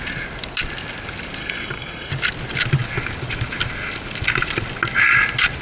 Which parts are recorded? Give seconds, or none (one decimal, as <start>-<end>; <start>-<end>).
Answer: 0.0-1.4; 2.1-5.6